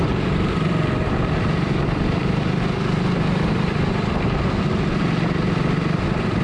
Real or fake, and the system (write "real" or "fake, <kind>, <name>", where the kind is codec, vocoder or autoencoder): fake, vocoder, BigVGAN v2